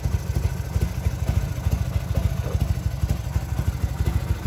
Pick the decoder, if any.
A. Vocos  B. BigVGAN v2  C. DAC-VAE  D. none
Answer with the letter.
D